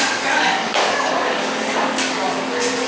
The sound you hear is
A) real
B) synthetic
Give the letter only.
B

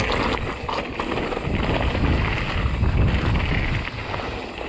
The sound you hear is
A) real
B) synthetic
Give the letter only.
A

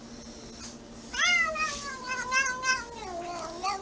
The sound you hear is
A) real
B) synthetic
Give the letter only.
A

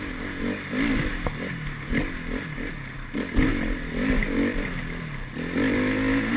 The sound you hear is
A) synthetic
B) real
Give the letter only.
B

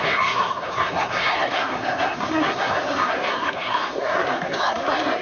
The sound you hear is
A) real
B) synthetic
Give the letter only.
B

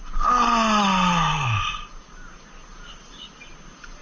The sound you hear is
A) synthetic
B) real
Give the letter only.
B